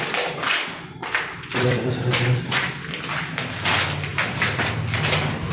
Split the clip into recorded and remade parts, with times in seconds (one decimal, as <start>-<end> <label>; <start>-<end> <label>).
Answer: 0.0-1.0 recorded; 1.0-2.4 remade; 2.4-4.1 recorded; 4.1-4.7 remade; 4.7-5.5 recorded